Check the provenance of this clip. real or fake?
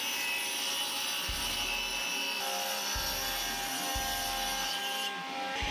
real